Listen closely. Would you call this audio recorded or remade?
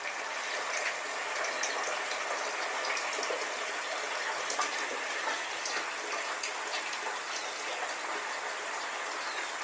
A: recorded